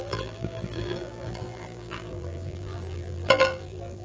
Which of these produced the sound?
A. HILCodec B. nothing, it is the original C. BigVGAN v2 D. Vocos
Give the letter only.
C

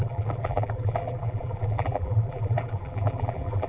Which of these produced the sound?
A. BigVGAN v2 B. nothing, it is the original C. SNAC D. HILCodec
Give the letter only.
A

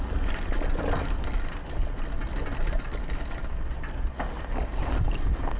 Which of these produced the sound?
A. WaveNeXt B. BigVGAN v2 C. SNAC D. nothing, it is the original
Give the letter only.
D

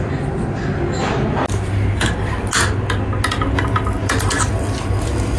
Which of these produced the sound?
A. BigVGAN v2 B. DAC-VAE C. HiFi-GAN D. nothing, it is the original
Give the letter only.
D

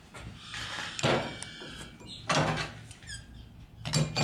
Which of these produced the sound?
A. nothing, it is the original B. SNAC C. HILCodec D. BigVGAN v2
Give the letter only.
A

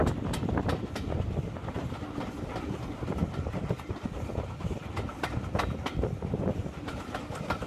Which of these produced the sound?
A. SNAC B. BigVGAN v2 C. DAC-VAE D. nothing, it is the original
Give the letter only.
D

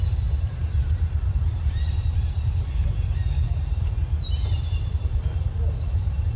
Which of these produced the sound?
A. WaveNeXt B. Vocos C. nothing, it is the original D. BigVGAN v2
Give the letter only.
D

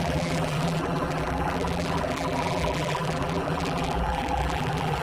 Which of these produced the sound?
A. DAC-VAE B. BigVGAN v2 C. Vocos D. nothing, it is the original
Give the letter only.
B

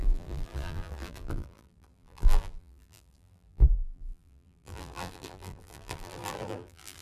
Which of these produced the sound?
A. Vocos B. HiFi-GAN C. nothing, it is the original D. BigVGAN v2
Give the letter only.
D